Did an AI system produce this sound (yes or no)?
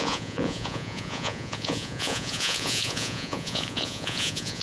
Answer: yes